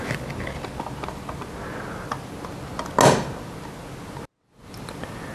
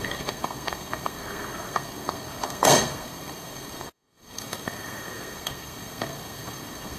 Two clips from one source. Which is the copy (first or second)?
second